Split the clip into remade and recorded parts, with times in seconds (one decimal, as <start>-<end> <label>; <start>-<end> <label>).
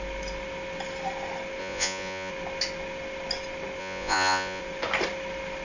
0.0-1.6 recorded; 1.6-2.3 remade; 2.3-3.8 recorded; 3.8-4.6 remade; 4.6-5.6 recorded